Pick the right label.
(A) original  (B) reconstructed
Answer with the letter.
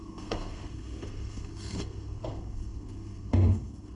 B